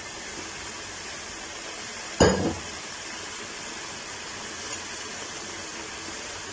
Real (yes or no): no